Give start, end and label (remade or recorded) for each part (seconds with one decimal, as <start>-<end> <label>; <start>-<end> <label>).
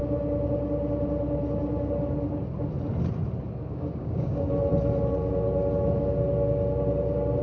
0.0-3.7 recorded; 3.7-4.5 remade; 4.5-7.4 recorded